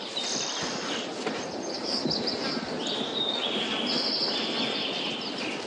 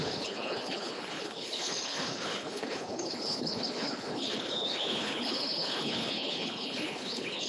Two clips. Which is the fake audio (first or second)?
second